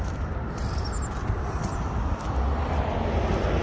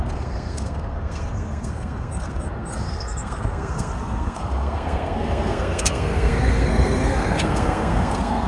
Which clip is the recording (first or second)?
first